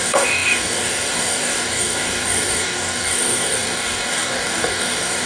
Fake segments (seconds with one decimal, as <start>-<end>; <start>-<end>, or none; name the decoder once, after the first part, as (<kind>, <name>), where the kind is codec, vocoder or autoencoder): 0.0-5.3 (codec, DAC)